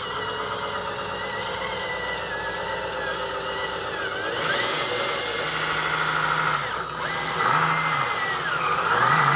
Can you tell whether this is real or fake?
real